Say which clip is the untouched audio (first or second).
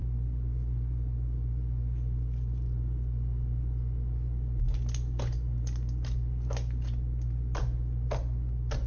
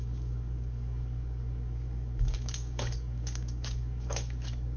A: first